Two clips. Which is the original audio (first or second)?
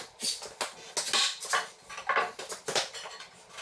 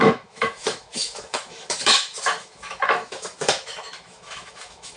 first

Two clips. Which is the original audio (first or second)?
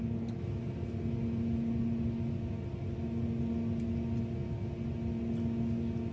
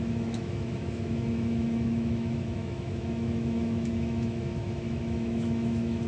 first